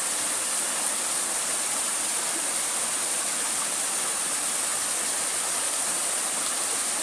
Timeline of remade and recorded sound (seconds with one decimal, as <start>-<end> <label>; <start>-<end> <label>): 0.0-7.0 recorded